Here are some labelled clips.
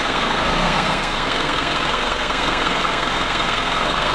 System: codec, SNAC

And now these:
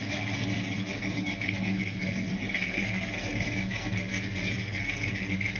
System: codec, SNAC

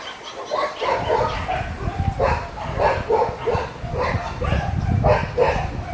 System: none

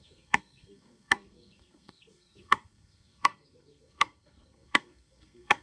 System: codec, SNAC